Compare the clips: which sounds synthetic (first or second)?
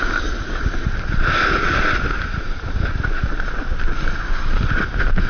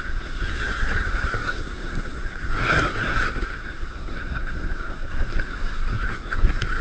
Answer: second